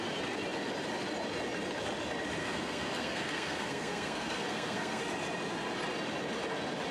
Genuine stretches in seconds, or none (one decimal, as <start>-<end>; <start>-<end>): 0.0-2.4; 5.0-6.9